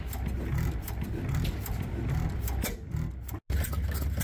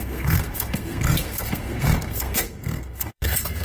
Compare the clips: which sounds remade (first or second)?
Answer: second